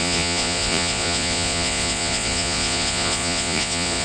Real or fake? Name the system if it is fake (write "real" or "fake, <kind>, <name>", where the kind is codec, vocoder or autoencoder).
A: fake, vocoder, Vocos